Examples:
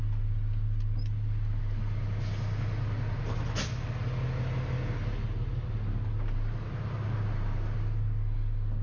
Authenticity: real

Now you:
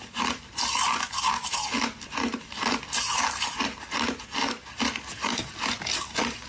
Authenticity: real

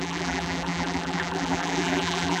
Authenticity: fake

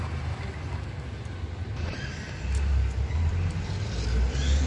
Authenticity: real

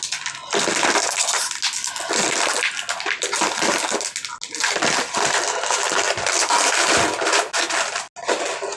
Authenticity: real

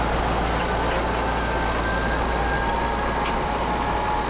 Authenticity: real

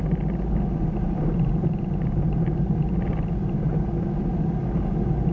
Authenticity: real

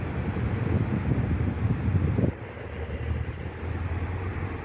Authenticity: real